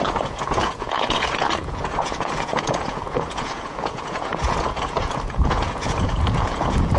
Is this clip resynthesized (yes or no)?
yes